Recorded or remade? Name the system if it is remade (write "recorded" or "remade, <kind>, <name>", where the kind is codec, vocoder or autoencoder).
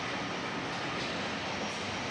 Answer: recorded